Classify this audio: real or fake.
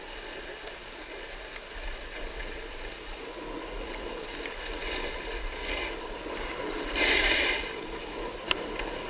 real